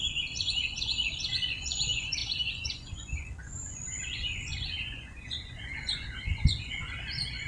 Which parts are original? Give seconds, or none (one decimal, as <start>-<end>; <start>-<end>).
none